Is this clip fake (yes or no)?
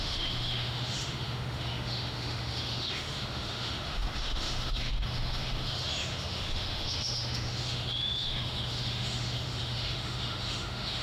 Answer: yes